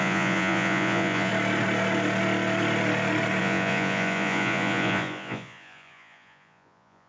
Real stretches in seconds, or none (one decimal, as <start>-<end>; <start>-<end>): 1.3-3.4